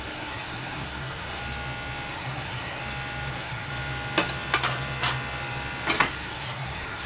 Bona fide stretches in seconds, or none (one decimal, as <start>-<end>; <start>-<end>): 1.4-2.1; 2.8-3.3; 3.7-6.0